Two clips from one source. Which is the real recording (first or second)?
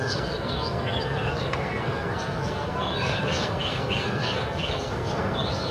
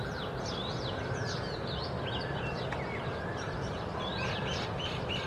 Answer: second